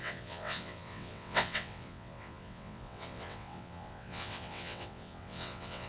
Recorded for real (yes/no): no